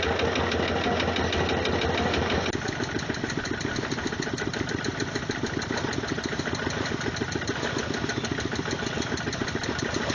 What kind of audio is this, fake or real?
real